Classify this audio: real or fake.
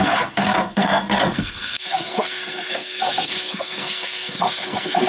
fake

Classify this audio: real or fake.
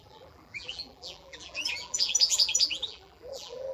fake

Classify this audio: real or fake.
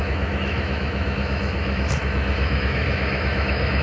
fake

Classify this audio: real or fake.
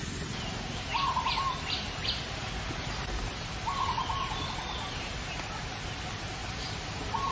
real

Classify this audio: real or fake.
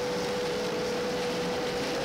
fake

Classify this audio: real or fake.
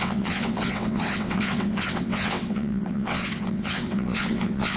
fake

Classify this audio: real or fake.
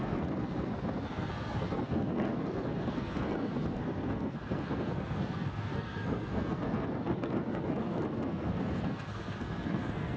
fake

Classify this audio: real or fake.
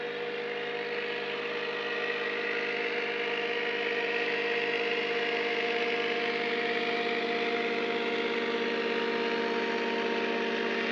real